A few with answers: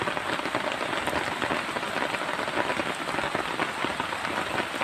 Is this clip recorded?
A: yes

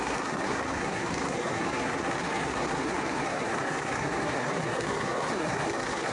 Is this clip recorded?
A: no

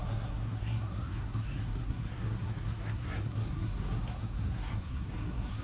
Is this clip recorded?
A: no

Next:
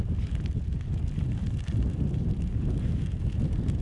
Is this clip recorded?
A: yes